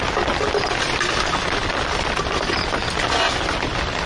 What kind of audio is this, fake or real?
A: real